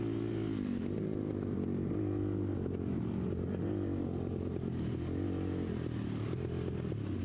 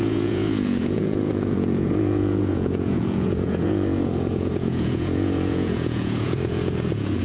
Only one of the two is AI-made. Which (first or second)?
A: second